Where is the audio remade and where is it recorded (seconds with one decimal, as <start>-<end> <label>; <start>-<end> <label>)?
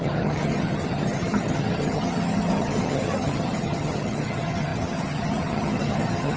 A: 0.0-6.4 remade